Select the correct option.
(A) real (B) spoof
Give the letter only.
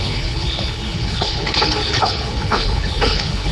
B